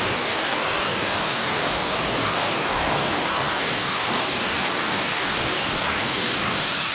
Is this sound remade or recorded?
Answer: remade